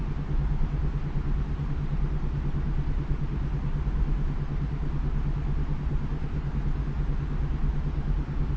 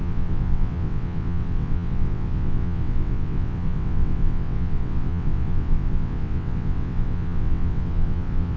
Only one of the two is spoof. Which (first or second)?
second